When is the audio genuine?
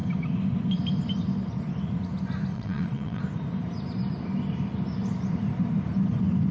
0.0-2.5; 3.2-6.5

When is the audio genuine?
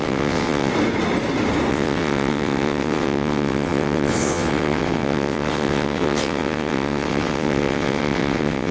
0.7-1.7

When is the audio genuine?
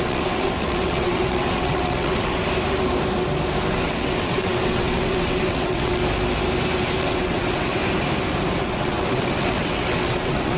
2.4-3.7; 6.0-7.0; 7.8-8.7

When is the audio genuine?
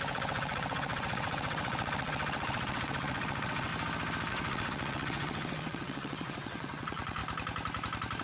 3.7-4.3; 7.2-8.2